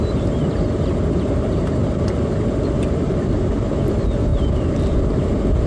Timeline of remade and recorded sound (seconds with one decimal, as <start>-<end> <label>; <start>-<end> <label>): 0.0-5.7 recorded